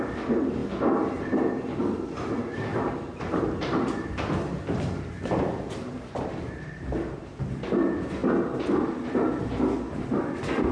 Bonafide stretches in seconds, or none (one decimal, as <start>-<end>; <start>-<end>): 0.0-2.7; 7.7-10.7